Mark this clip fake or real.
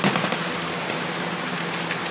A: real